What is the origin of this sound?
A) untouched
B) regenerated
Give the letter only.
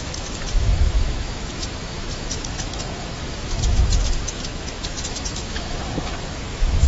B